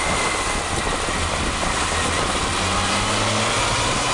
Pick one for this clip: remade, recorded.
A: recorded